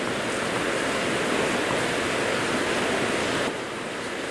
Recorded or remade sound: recorded